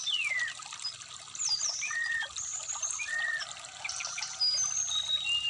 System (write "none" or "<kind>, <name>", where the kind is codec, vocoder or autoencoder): none